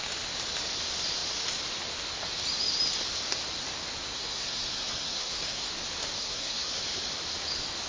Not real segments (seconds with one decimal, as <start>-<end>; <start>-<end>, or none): 4.1-5.7; 6.2-6.7